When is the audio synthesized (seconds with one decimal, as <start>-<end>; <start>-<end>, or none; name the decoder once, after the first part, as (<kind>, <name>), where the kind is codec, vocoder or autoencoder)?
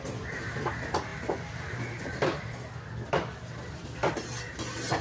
1.1-4.1 (vocoder, BigVGAN v2)